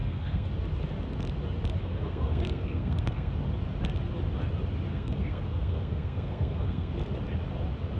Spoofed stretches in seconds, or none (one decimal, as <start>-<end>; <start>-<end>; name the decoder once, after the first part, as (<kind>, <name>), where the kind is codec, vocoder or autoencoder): 0.0-0.5 (codec, SNAC); 1.8-3.3; 4.9-6.9